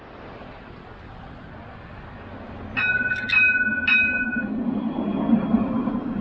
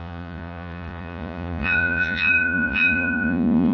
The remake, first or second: second